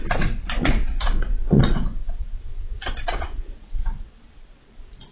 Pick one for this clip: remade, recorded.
remade